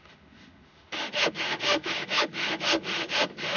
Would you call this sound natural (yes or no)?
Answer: no